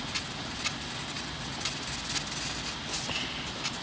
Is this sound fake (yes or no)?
no